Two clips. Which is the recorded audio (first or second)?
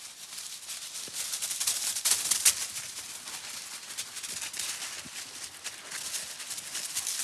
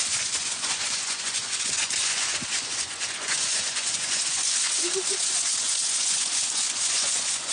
first